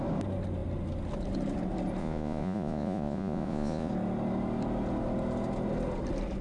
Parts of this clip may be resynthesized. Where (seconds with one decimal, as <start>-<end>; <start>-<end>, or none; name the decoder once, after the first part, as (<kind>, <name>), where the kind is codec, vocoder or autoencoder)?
2.0-3.9 (vocoder, Vocos)